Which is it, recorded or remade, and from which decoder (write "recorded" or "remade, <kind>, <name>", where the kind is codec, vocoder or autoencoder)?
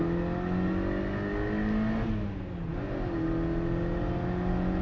recorded